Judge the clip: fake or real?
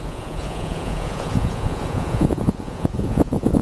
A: fake